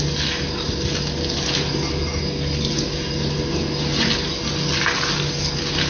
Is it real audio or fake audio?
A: real